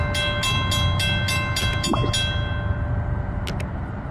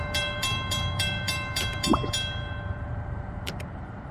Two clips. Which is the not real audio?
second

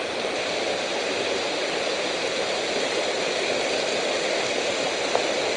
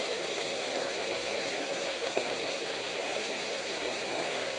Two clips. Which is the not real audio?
second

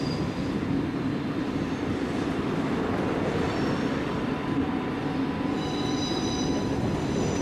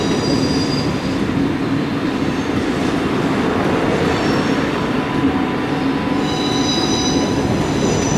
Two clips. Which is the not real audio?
first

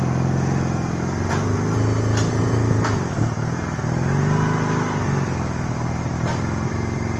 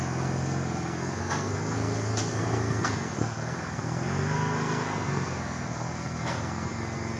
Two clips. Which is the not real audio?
second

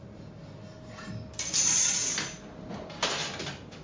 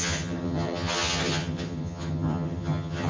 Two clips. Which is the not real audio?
second